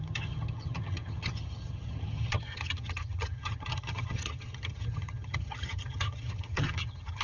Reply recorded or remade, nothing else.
remade